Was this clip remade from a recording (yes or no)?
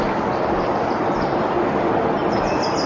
no